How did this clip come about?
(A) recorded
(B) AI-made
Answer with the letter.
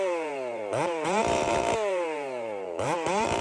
B